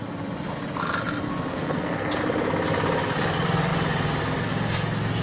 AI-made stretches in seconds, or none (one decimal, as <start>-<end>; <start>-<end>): 1.5-2.2